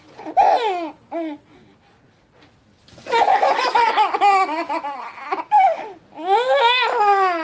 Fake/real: real